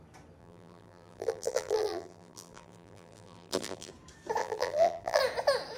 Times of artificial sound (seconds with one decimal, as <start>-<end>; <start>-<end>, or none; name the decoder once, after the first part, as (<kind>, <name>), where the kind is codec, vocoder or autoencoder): 0.4-3.9 (vocoder, BigVGAN v2); 4.4-5.2